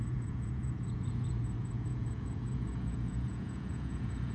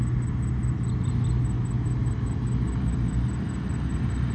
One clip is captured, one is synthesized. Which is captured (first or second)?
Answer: second